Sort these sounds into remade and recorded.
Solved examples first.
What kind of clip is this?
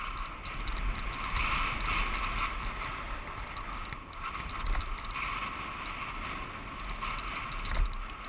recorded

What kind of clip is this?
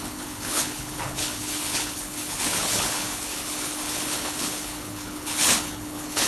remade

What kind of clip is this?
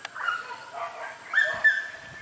recorded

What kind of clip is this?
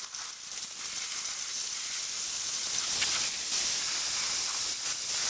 recorded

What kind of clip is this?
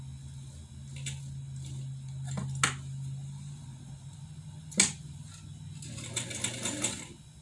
recorded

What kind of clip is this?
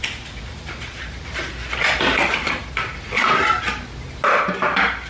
remade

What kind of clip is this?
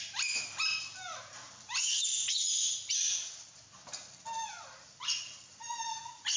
recorded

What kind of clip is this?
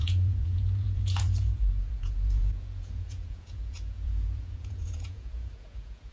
remade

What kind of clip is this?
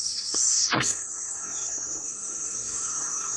remade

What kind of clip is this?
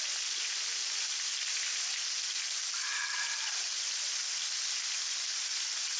recorded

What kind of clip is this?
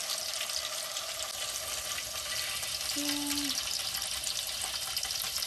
recorded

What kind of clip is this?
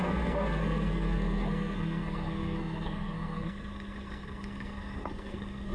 remade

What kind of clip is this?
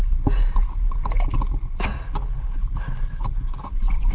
recorded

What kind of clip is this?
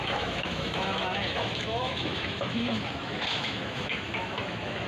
remade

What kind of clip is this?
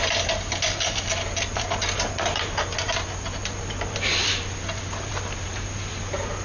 recorded